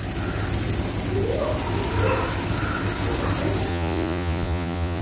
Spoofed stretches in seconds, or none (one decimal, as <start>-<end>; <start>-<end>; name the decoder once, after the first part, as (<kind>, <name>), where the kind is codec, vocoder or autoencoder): 3.7-5.0 (vocoder, Vocos)